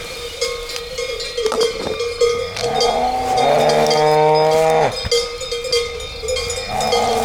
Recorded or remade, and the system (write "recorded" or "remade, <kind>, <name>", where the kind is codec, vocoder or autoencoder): recorded